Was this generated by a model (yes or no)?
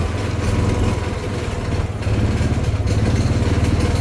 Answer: no